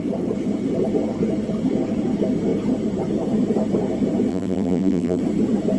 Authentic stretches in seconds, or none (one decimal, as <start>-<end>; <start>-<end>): 0.0-4.3; 5.2-5.8